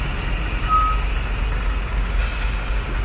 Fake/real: real